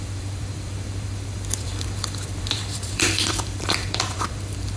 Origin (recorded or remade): remade